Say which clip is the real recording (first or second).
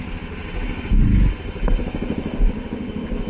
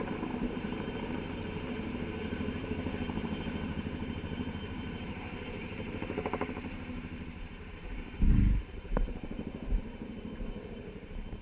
first